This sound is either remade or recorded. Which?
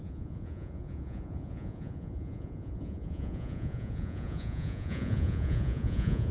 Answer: remade